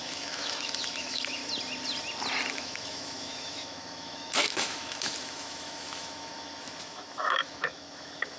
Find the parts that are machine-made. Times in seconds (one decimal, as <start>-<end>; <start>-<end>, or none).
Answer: 0.0-1.4; 2.5-8.4